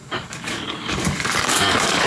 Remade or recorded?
remade